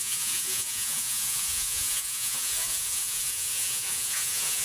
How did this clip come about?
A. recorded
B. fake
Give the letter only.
B